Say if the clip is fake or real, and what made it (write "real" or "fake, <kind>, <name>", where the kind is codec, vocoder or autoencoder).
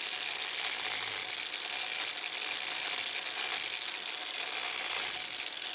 real